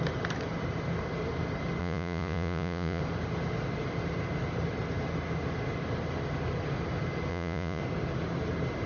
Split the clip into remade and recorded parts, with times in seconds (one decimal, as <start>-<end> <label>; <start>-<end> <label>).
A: 0.0-1.8 recorded; 1.8-3.0 remade; 3.0-7.3 recorded; 7.3-7.8 remade; 7.8-8.9 recorded